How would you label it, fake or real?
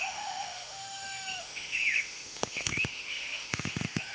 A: fake